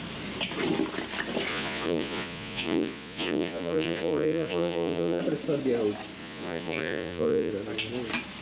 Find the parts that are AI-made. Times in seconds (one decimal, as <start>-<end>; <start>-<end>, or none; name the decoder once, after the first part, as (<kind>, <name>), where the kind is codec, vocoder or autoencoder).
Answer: 1.5-5.2 (vocoder, Vocos); 6.2-7.5